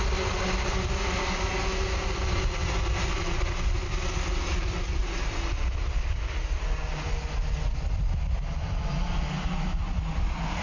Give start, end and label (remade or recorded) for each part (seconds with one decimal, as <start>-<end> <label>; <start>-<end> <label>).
0.0-10.6 recorded